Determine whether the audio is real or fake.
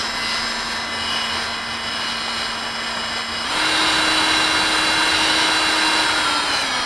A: real